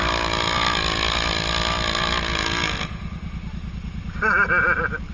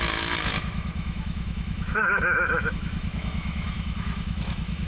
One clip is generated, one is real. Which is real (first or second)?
first